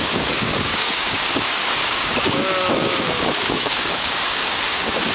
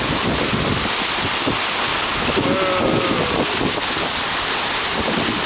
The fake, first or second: first